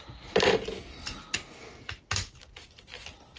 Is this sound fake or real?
real